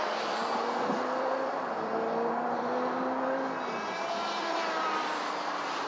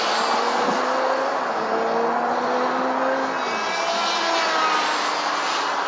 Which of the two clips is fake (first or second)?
first